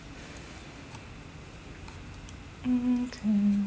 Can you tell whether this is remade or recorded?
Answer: recorded